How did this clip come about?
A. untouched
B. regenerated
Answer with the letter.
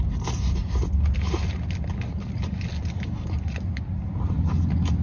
A